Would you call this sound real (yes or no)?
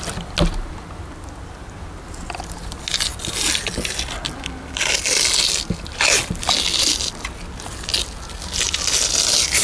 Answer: yes